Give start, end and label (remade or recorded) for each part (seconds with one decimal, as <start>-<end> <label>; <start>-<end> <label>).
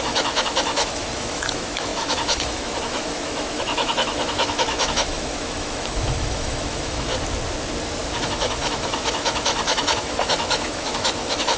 0.0-7.1 remade; 7.1-8.2 recorded; 8.2-11.6 remade